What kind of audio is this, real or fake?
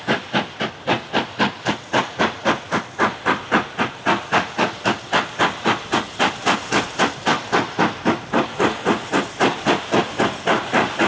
fake